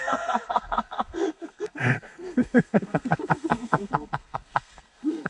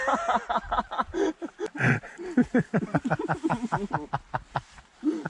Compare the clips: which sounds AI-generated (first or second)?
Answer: first